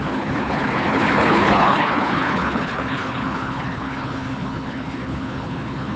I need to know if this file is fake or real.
fake